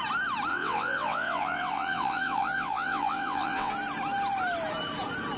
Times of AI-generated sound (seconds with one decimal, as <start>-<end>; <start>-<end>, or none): 0.5-3.7